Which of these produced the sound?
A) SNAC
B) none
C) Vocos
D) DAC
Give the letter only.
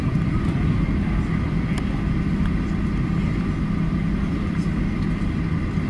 B